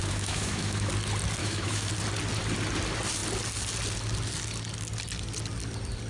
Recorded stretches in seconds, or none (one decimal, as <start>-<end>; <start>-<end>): 0.9-1.4; 1.9-6.1